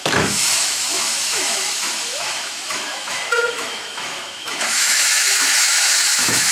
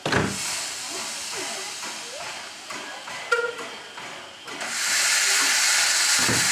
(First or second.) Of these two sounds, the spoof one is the first